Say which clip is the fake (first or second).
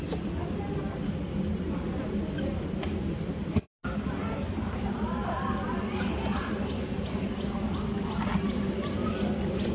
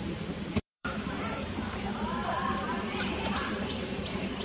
second